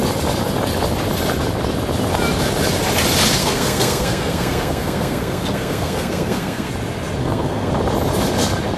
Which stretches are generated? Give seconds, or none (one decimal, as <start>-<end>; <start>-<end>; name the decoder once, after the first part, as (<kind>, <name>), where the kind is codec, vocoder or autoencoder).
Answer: 3.4-6.7 (codec, SNAC); 7.2-7.7

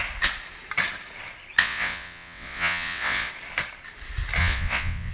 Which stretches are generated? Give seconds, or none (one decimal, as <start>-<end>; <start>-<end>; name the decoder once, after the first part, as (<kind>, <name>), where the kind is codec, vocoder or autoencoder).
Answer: 1.6-3.3 (vocoder, WaveNeXt); 4.4-5.1

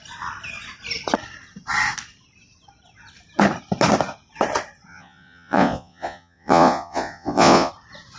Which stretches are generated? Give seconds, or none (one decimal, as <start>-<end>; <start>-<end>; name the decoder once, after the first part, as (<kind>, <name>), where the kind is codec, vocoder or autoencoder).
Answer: 4.9-7.7 (vocoder, Vocos)

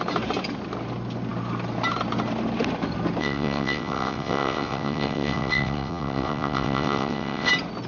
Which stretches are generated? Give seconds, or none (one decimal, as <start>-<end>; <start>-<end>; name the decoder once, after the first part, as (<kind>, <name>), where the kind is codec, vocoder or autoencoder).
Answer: 3.2-7.5 (vocoder, WaveNeXt)

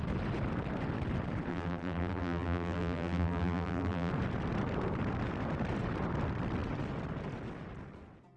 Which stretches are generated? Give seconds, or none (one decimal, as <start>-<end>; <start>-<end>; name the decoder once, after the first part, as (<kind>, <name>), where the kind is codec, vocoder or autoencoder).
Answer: 1.5-4.1 (vocoder, BigVGAN v2)

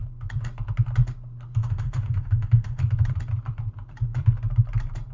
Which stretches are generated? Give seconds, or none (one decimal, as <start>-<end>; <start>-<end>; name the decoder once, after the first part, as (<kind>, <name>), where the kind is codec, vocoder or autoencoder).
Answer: 1.6-2.8 (autoencoder, DAC-VAE)